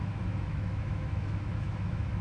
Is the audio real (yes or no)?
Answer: no